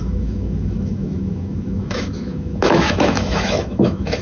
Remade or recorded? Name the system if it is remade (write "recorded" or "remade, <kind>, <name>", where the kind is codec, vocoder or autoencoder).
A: remade, autoencoder, DAC-VAE